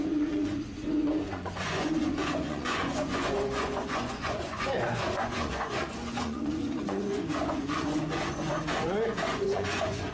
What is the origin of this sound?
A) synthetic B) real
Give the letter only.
A